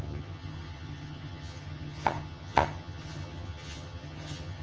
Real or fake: fake